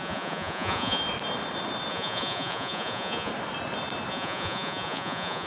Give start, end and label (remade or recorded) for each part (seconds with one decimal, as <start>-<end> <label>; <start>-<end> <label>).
0.0-1.0 remade; 1.0-1.9 recorded; 1.9-3.3 remade; 3.3-4.1 recorded; 4.1-5.5 remade